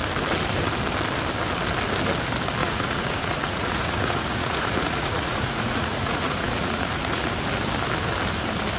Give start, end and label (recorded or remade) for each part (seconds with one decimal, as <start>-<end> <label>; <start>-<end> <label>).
0.0-2.6 recorded; 2.6-7.3 remade; 7.3-8.8 recorded